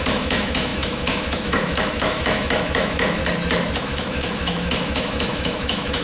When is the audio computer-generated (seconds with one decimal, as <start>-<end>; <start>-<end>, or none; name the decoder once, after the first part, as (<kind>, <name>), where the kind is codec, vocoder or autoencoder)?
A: 0.0-3.2 (autoencoder, DAC-VAE); 3.8-6.0